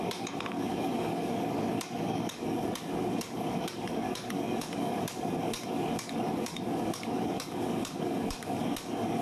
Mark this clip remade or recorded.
remade